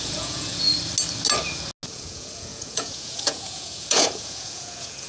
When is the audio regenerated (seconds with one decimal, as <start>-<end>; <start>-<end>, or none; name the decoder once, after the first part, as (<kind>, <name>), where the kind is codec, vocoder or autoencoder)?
0.0-0.7 (vocoder, Vocos); 1.9-5.1